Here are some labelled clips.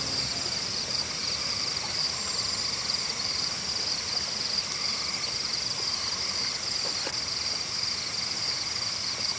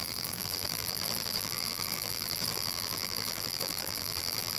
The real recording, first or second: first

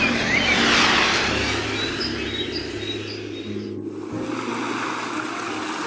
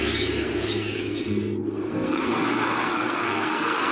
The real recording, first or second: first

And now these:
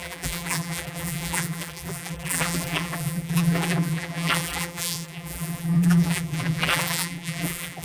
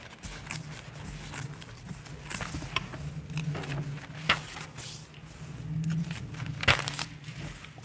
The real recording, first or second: second